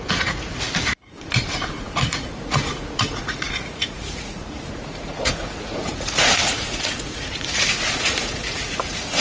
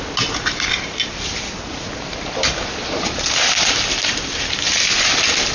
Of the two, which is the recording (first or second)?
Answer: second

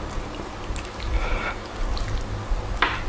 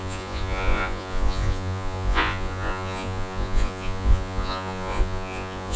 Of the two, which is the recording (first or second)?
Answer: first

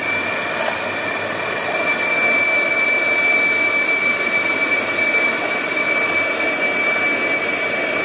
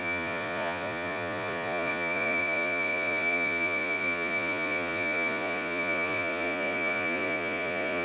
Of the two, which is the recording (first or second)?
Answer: first